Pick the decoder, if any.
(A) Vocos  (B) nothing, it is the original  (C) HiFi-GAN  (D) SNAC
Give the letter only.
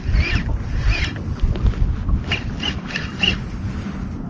B